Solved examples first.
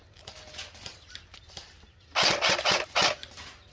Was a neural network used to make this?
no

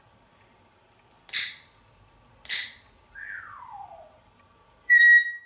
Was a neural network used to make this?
no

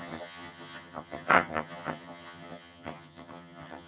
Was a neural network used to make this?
yes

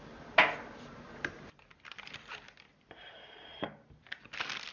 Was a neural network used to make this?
no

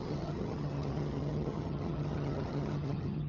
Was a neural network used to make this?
yes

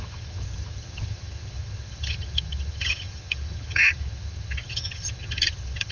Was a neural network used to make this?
yes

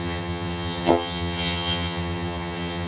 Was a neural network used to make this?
yes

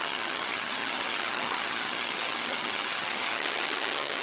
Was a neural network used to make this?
yes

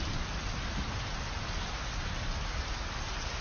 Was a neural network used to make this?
no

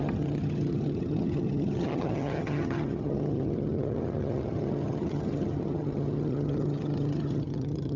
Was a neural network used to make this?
yes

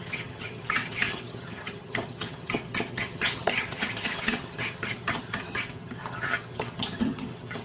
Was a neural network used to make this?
yes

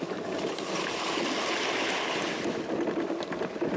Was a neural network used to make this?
no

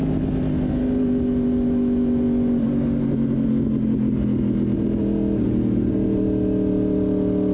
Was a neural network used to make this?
no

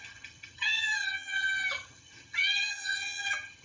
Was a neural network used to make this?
yes